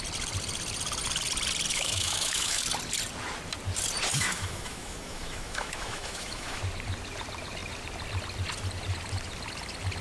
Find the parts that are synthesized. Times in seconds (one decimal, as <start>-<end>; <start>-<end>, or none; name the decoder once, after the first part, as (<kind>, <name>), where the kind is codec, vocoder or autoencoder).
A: 1.7-2.6 (autoencoder, DAC-VAE); 4.1-6.6